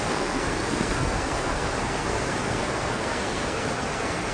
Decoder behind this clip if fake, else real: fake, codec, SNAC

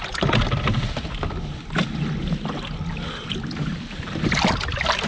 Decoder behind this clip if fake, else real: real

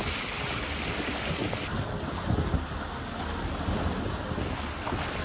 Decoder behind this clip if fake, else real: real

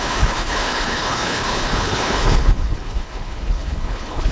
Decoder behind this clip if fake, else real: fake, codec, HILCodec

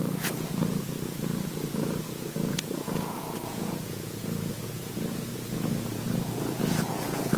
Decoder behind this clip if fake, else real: fake, vocoder, Vocos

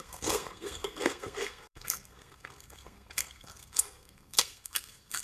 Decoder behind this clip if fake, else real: fake, codec, SNAC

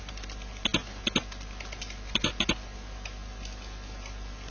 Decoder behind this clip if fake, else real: real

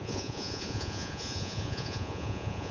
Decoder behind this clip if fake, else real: fake, vocoder, Vocos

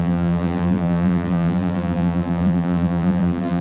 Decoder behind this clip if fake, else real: fake, vocoder, BigVGAN v2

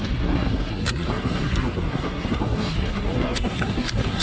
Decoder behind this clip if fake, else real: fake, codec, SNAC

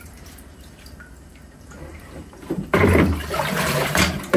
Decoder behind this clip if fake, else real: fake, vocoder, BigVGAN v2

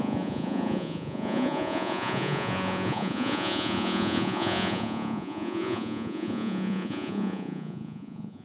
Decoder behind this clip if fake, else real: fake, vocoder, Vocos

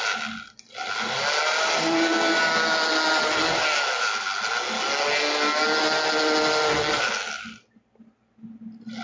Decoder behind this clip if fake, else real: real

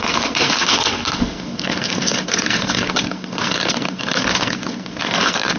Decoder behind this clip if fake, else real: fake, codec, SNAC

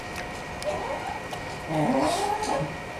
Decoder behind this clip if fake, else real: real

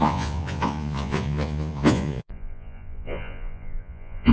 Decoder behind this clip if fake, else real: fake, vocoder, Vocos